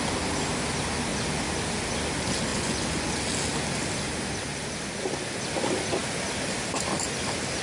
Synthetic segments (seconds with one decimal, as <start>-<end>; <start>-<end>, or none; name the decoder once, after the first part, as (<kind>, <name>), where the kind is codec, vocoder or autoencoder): 2.5-3.1 (vocoder, Vocos)